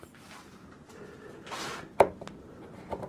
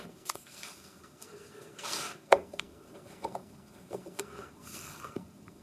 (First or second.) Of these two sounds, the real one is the first